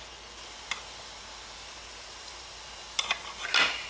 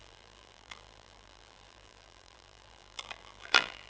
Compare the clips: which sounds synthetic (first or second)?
second